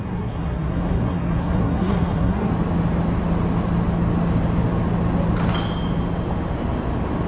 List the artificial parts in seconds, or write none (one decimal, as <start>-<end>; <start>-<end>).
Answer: 0.0-2.5